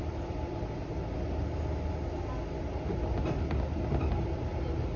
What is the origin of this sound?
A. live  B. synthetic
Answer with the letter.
A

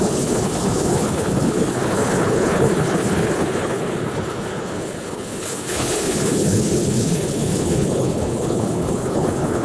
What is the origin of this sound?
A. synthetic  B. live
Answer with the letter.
A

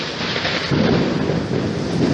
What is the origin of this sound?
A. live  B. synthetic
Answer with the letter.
A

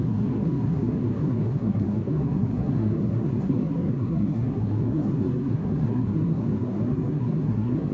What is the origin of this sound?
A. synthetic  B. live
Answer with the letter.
A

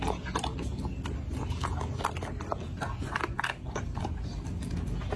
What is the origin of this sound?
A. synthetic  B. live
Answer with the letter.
B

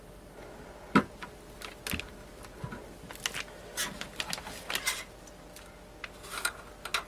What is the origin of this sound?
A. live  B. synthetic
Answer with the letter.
A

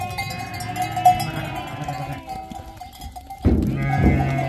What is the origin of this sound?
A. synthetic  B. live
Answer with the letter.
B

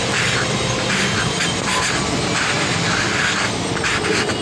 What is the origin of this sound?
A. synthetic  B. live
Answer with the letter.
B